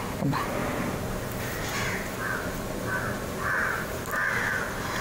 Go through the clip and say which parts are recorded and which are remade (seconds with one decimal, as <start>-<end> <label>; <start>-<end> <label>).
0.0-5.0 recorded